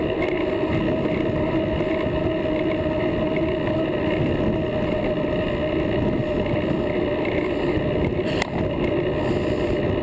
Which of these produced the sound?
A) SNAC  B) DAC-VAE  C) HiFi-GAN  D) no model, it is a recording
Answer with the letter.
D